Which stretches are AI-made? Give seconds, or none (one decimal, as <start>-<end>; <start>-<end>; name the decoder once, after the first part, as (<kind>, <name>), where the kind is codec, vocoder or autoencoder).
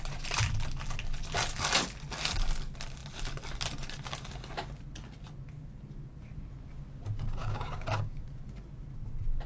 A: 7.4-8.2 (codec, DAC)